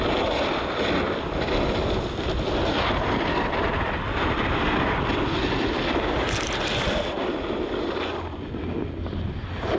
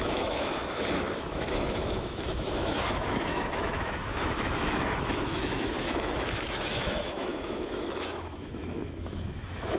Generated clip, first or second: second